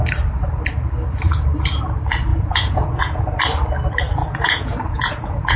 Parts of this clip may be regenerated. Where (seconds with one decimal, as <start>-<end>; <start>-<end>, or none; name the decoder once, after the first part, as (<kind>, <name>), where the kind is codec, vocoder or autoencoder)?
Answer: 2.3-3.2 (vocoder, Vocos); 4.2-5.6